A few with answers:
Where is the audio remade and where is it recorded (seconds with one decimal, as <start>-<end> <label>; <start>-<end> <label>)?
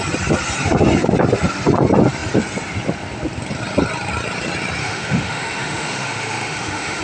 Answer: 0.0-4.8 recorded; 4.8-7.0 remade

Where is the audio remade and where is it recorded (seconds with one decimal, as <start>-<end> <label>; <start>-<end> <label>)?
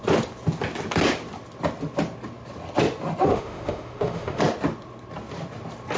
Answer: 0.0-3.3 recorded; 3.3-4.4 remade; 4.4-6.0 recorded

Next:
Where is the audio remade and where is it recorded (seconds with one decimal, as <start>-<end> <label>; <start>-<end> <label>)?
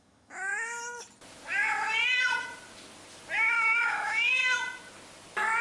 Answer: 0.0-0.5 remade; 0.5-3.5 recorded; 3.5-4.4 remade; 4.4-5.6 recorded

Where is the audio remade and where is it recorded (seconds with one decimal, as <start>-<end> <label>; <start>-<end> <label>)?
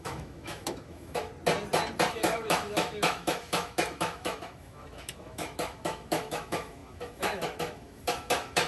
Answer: 0.0-1.3 remade; 1.3-2.1 recorded; 2.1-8.7 remade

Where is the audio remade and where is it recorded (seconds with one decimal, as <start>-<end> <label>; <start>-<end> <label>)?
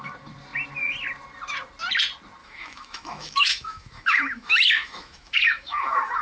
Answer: 0.0-2.4 recorded; 2.4-6.2 remade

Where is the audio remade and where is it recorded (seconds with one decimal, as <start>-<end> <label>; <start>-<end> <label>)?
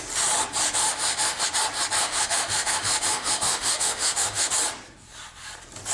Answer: 0.0-0.8 recorded; 0.8-1.4 remade; 1.4-2.0 recorded; 2.0-4.5 remade; 4.5-5.9 recorded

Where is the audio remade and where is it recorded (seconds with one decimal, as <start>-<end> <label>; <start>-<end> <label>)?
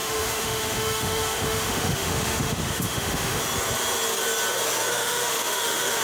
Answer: 0.0-3.4 remade; 3.4-4.9 recorded; 4.9-6.0 remade